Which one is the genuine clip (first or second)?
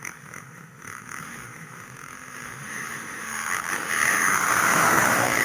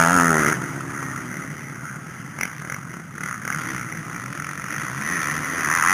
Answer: second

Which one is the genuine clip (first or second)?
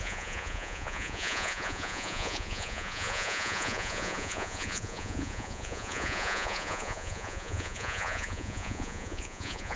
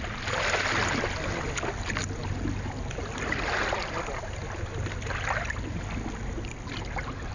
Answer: second